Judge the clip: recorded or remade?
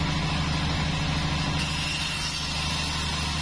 recorded